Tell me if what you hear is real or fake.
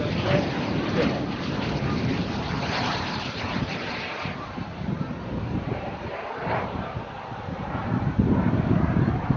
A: fake